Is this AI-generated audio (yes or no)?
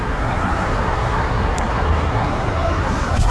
yes